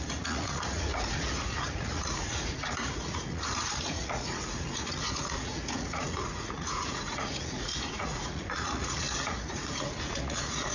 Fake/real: fake